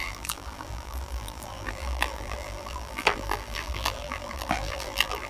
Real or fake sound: fake